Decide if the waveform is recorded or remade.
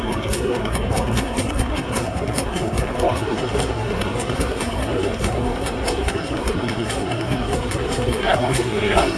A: remade